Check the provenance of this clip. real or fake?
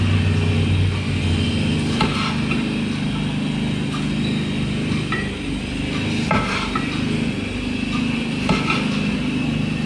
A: real